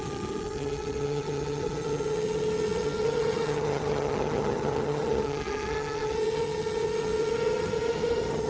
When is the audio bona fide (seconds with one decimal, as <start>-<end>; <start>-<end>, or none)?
none